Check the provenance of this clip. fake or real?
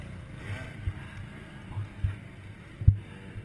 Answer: real